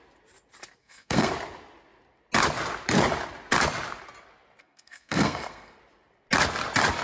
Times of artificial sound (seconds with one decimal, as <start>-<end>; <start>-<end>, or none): 0.8-1.3; 4.6-5.8